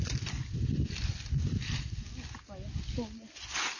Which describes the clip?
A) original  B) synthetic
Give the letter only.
A